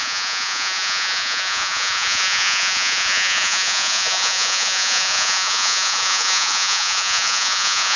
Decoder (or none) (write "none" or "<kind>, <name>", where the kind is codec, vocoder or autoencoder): vocoder, Vocos